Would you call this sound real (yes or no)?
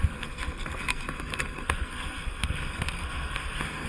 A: no